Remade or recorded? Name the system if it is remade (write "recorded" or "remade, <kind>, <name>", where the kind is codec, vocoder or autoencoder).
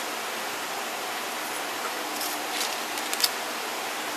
remade, vocoder, BigVGAN v2